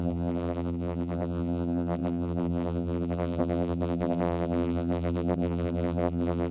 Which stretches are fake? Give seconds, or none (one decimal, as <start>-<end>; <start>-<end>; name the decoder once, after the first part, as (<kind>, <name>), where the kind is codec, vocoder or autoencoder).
0.0-6.5 (vocoder, BigVGAN v2)